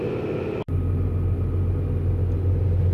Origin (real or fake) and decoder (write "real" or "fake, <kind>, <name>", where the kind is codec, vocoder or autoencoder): real